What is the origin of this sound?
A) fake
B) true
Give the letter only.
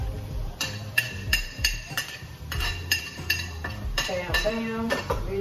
A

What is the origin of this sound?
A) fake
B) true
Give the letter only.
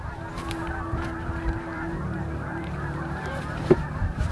A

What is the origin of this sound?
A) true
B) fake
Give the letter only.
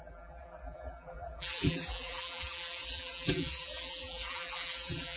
B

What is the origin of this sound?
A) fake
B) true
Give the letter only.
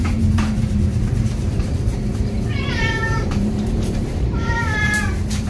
A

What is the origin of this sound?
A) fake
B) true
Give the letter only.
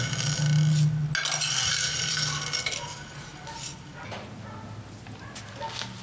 B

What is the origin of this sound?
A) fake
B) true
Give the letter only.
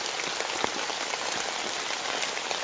B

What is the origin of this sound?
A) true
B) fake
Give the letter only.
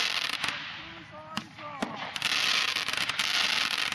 A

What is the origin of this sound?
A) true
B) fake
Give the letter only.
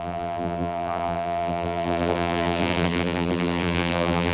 B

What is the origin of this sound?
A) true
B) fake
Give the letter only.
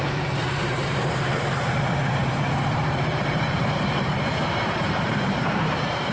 B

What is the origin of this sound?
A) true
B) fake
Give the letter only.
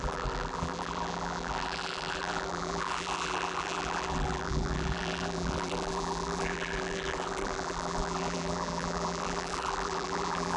B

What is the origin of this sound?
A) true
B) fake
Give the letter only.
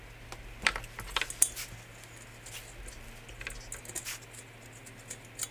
A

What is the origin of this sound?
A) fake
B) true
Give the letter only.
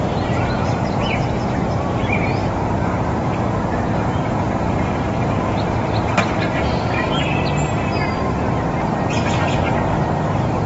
A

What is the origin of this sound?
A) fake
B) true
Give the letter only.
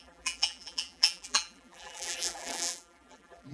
A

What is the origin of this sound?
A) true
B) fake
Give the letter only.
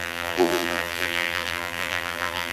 B